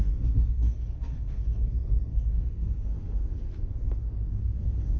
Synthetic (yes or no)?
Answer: yes